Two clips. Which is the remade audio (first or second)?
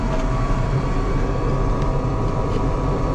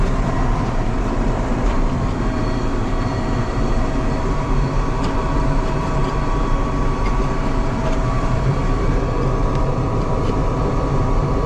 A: second